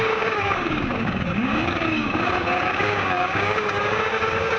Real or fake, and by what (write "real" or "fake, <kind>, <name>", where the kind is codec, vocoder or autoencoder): fake, codec, DAC